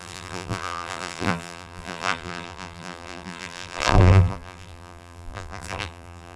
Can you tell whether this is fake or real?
fake